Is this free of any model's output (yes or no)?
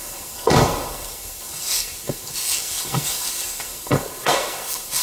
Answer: no